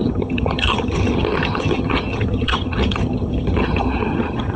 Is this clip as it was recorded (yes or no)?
no